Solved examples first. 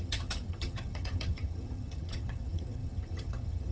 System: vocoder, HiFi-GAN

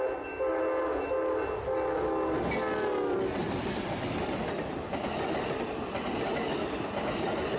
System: none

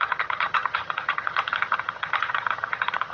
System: vocoder, HiFi-GAN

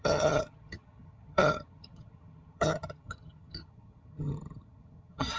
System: vocoder, HiFi-GAN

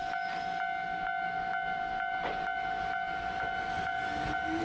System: none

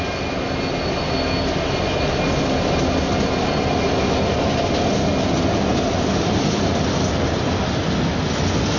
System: none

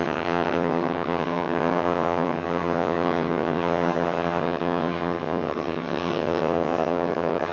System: vocoder, HiFi-GAN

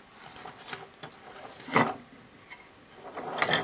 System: none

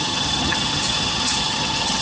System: vocoder, HiFi-GAN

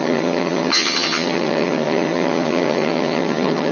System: vocoder, HiFi-GAN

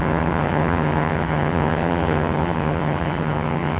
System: vocoder, HiFi-GAN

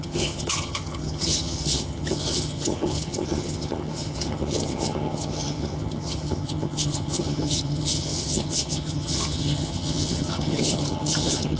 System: vocoder, HiFi-GAN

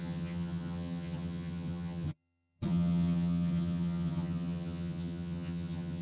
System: vocoder, HiFi-GAN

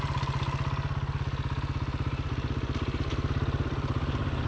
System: none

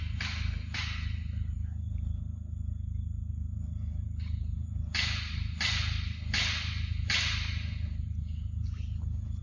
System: none